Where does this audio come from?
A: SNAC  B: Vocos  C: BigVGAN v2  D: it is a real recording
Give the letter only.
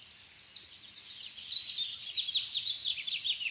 D